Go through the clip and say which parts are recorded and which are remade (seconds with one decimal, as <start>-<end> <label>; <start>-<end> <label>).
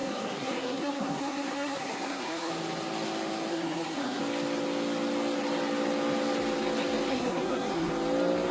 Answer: 0.0-2.5 remade; 2.5-3.5 recorded; 3.5-4.2 remade; 4.2-7.1 recorded; 7.1-7.9 remade; 7.9-8.5 recorded